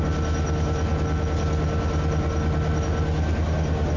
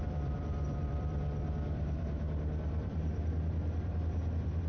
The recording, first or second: first